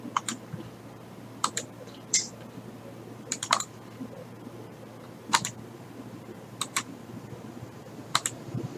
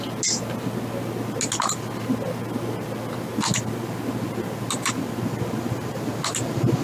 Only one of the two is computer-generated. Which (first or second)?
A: first